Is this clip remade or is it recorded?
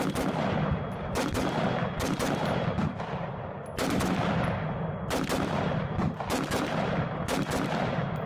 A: recorded